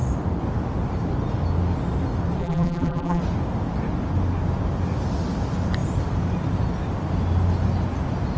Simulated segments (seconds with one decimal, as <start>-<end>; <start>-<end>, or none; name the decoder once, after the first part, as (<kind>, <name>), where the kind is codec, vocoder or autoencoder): 2.4-3.2 (vocoder, BigVGAN v2)